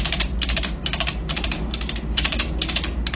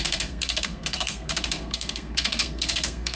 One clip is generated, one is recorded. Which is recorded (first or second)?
first